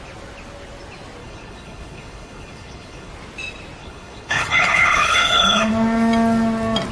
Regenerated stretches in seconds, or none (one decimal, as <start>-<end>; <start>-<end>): 1.2-3.1; 3.8-5.7